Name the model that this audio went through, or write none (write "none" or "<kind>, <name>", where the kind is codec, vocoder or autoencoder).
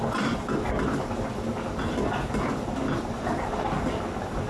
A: none